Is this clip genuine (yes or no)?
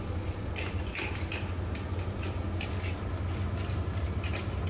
yes